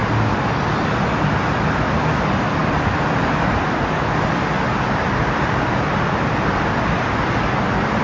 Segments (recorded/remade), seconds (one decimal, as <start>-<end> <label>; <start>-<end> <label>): 0.0-8.0 recorded